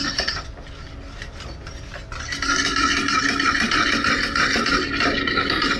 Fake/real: real